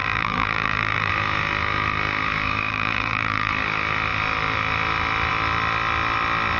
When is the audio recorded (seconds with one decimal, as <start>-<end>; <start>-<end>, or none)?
1.1-2.7; 3.5-6.6